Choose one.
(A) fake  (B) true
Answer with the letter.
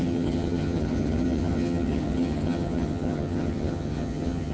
A